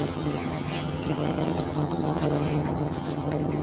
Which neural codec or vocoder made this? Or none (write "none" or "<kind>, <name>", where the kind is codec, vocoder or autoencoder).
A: vocoder, HiFi-GAN